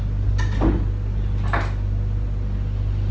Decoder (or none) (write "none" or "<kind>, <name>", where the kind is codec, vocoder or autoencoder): none